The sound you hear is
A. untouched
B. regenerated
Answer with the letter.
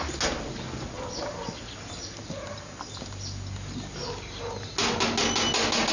A